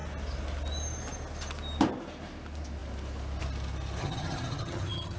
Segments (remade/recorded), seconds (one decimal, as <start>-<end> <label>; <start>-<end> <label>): 0.0-4.0 recorded; 4.0-5.2 remade